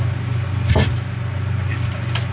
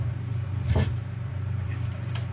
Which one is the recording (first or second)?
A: first